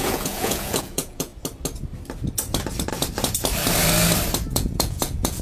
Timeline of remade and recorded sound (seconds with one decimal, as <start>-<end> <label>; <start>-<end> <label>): 0.0-1.3 remade; 1.3-4.5 recorded; 4.5-5.4 remade